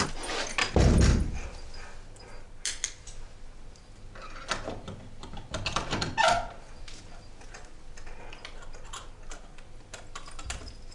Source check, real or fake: real